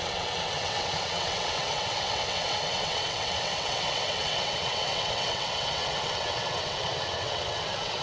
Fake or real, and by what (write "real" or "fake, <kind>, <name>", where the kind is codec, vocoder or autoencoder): fake, vocoder, WaveNeXt